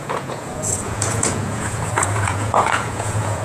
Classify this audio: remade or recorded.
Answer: remade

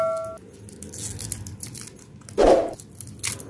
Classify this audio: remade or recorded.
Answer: recorded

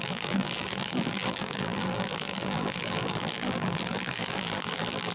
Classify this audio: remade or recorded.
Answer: remade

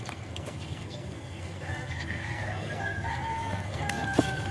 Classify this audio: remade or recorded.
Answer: remade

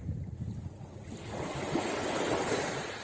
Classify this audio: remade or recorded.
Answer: recorded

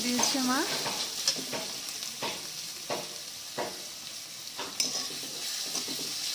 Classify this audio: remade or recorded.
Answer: recorded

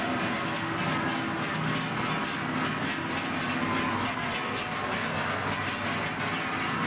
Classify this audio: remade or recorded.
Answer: recorded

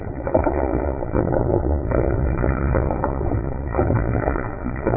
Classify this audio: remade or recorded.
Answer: remade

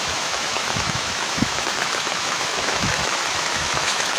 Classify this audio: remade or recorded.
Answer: remade